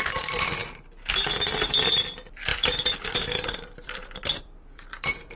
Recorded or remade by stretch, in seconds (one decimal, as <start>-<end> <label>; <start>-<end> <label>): 0.0-0.6 remade; 0.6-1.1 recorded; 1.1-5.4 remade